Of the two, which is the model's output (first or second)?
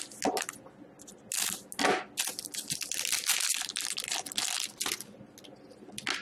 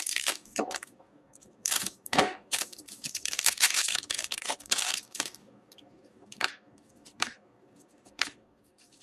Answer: second